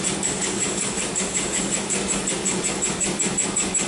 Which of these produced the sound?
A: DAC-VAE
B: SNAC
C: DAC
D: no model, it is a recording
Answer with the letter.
C